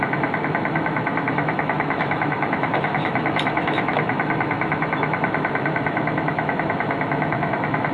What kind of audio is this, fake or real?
fake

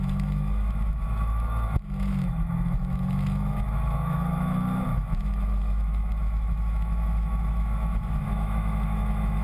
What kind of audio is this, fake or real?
fake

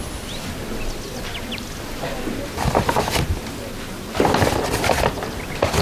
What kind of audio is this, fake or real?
real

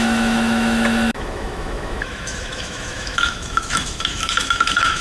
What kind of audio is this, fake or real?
fake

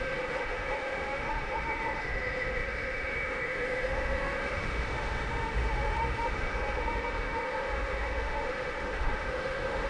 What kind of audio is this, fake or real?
fake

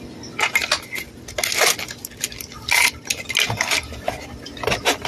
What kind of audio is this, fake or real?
real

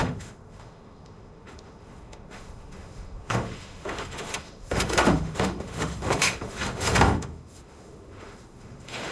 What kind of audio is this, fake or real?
fake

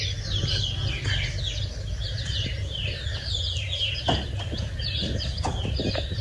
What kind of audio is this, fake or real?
real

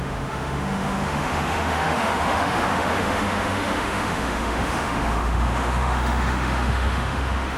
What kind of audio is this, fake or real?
fake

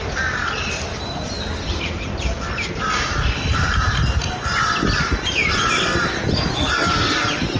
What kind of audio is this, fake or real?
real